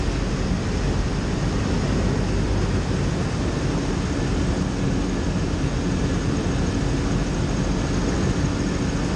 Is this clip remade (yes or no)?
no